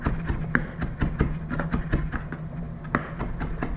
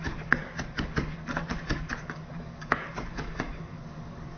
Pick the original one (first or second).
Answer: first